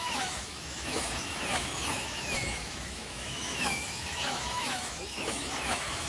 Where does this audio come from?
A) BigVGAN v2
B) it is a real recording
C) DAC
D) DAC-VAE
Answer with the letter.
D